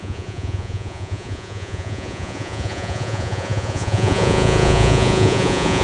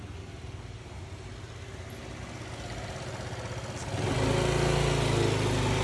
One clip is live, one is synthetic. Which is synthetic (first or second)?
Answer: first